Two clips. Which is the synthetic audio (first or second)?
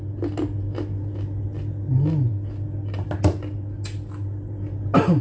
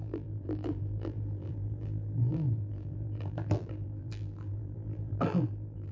second